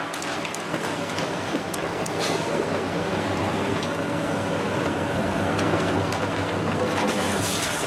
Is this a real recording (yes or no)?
no